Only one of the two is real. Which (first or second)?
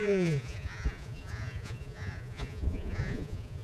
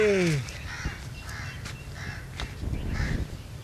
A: second